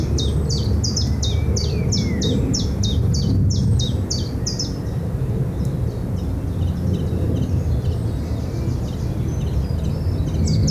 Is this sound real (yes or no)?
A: yes